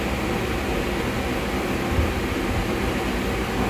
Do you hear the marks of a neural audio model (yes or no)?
no